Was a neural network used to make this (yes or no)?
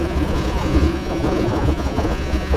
yes